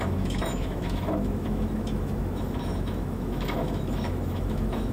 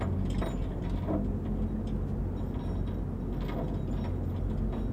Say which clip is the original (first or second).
second